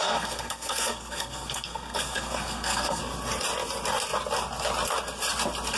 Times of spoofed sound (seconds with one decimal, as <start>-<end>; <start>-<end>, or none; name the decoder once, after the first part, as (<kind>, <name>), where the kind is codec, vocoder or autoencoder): 0.0-3.0 (codec, SNAC)